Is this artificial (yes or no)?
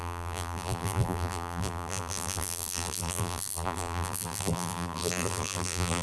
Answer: yes